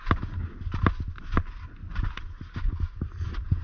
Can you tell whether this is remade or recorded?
recorded